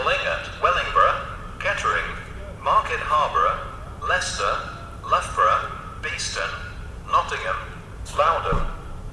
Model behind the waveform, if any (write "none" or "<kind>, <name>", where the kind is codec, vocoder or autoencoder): vocoder, BigVGAN v2